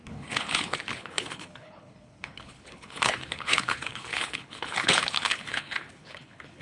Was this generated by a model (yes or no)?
yes